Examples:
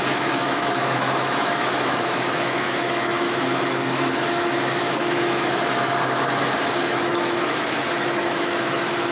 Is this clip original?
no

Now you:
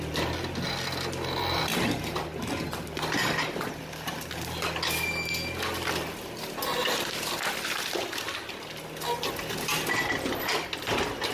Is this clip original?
yes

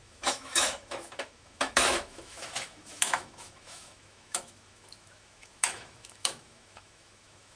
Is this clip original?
no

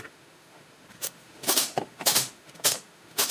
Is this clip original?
no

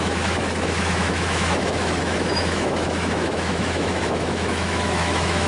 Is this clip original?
no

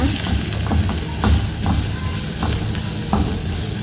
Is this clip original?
yes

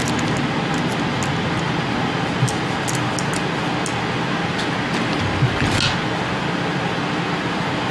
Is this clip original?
yes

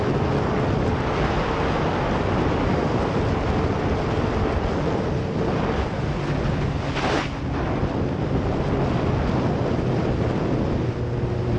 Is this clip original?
yes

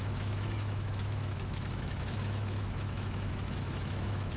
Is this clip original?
no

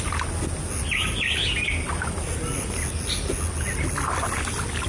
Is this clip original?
yes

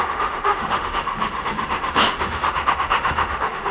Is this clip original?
no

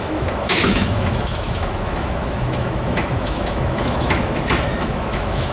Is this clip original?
no